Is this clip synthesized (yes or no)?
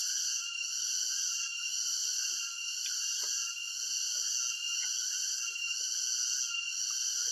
no